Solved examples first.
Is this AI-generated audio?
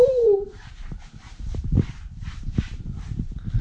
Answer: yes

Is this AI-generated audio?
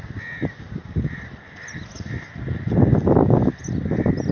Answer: no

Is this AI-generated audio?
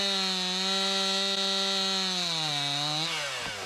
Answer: no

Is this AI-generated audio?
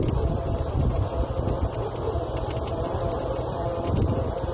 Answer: yes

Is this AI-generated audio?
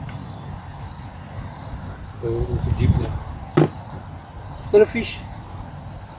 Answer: no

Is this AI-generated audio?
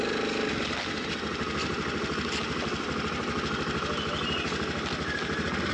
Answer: no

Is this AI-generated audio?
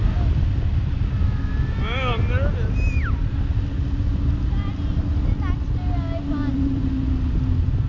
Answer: no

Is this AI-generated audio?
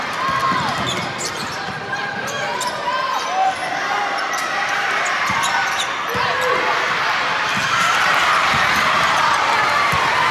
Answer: yes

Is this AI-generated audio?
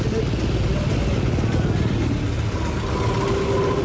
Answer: no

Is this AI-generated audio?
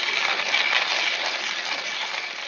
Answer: no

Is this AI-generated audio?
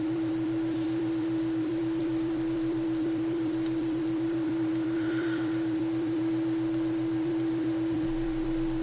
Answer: yes